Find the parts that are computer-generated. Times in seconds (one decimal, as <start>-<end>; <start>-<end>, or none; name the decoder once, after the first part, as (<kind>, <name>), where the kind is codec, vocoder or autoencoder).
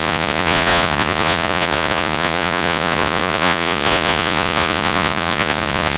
0.0-6.0 (vocoder, Vocos)